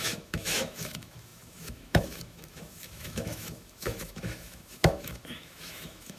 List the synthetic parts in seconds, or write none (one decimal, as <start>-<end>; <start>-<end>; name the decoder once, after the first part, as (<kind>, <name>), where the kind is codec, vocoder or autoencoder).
0.0-6.2 (autoencoder, DAC-VAE)